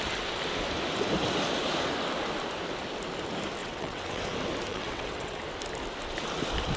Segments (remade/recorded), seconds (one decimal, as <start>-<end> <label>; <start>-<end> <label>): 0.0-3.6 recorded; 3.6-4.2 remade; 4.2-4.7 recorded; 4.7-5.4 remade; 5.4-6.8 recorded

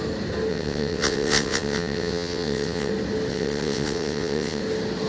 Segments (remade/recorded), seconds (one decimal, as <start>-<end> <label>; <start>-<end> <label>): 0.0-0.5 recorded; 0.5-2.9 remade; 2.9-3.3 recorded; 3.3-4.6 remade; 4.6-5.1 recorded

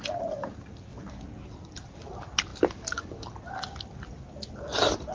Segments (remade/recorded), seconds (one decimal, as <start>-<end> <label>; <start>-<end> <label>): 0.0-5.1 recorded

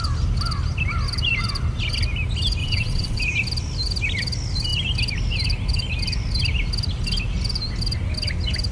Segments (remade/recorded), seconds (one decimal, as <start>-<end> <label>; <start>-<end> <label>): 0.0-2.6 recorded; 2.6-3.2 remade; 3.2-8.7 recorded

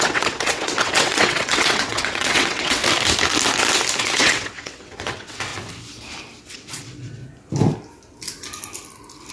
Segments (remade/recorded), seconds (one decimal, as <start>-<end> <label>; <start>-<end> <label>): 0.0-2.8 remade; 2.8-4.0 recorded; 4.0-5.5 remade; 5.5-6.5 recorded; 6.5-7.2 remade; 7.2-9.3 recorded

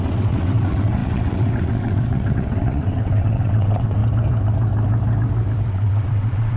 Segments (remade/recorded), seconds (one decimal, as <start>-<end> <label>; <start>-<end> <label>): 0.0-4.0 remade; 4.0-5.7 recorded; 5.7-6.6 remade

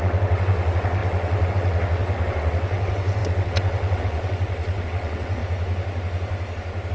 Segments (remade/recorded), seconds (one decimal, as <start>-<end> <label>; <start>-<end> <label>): 0.0-5.4 remade; 5.4-6.9 recorded